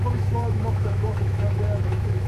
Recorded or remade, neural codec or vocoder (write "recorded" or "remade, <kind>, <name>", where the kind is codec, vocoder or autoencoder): remade, autoencoder, DAC-VAE